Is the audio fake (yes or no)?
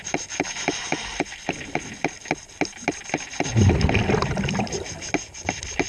no